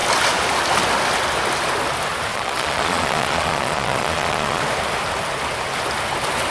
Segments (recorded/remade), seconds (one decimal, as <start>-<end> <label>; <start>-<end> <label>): 0.0-2.3 recorded; 2.3-4.6 remade; 4.6-6.5 recorded